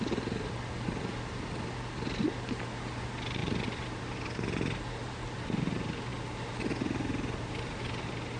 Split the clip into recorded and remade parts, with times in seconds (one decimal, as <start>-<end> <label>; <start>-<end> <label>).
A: 0.0-8.4 recorded